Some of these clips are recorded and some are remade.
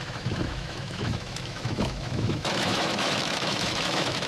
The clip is remade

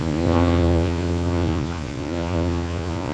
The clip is remade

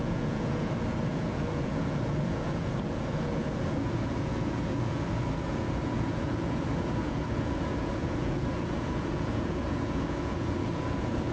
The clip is remade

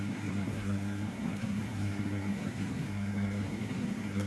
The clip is remade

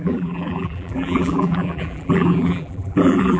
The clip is remade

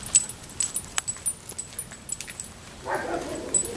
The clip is recorded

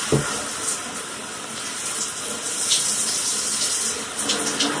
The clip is recorded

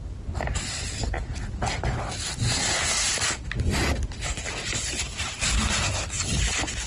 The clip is recorded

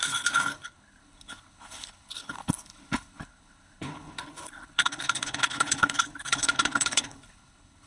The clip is remade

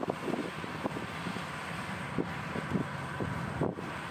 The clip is recorded